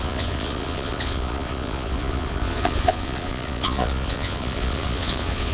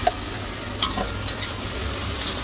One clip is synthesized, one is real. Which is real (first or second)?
second